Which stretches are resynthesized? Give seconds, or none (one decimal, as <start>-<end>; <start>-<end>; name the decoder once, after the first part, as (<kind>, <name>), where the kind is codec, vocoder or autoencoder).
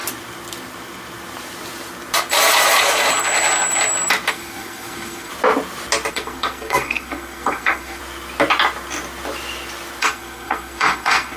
4.3-5.3 (codec, SNAC); 6.1-8.0; 10.0-11.4